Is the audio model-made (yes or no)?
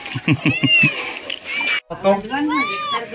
no